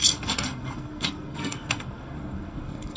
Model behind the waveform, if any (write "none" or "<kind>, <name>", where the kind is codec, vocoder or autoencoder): codec, SNAC